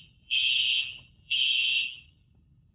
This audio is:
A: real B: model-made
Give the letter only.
B